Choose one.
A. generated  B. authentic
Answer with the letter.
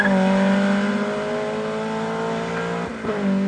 B